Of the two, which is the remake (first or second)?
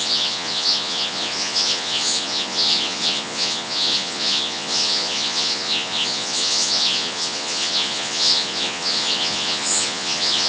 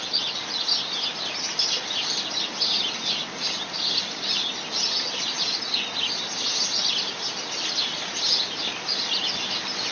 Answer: first